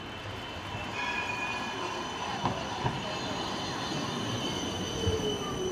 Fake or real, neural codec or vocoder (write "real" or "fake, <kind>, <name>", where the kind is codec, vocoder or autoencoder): real